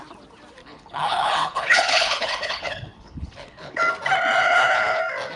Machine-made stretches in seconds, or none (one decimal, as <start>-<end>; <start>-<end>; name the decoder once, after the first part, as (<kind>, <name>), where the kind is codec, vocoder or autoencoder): 0.6-3.8 (codec, HILCodec); 4.4-5.0